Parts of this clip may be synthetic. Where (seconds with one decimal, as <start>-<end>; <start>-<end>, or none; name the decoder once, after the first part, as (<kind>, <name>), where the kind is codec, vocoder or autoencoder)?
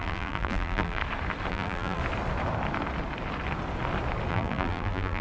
0.0-1.0 (vocoder, BigVGAN v2); 1.5-2.0; 4.3-5.2